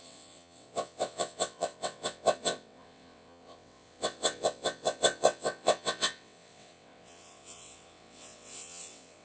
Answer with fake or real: fake